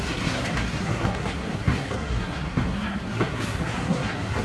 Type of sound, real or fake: fake